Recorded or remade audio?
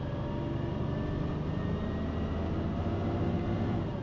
recorded